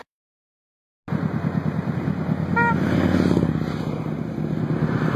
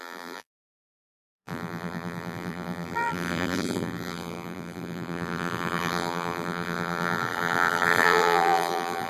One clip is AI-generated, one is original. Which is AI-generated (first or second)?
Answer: second